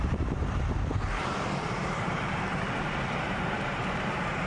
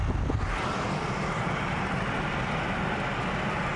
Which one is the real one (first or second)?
second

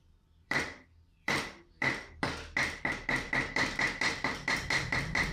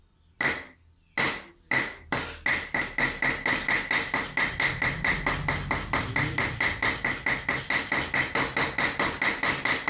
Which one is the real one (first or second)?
second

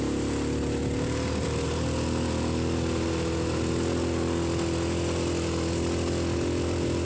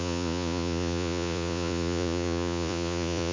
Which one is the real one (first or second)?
first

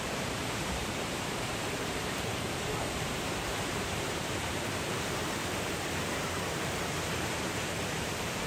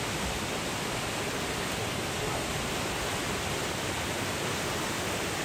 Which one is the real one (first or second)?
second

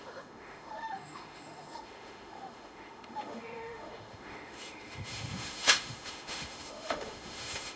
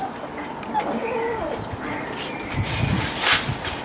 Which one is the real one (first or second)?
second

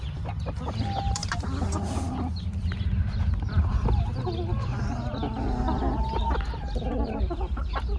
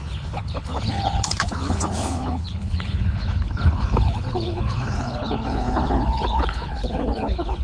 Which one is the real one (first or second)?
first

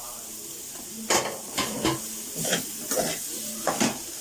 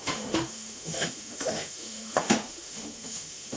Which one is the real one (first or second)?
first